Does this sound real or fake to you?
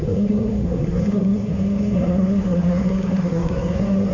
fake